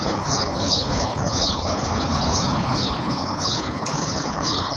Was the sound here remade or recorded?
remade